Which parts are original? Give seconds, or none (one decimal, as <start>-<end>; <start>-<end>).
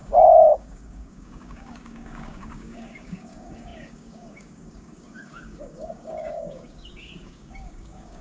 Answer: none